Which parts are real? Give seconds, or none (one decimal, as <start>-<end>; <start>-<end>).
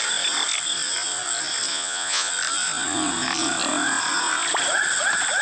0.0-1.7; 2.3-5.4